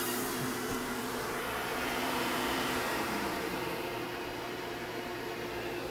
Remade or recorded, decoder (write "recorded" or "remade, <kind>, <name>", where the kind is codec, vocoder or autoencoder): remade, vocoder, BigVGAN v2